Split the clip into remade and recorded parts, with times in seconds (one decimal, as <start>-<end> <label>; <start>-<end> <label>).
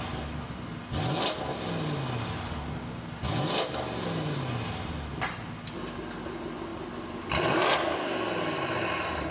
0.0-9.3 recorded